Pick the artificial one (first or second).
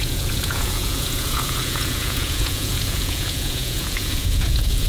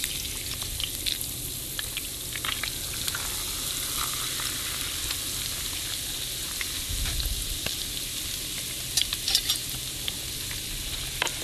first